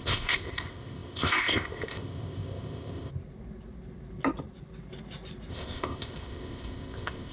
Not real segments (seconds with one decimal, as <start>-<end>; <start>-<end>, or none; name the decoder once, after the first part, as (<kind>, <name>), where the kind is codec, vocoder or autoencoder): 0.0-3.1 (codec, ZipCodec); 5.5-7.3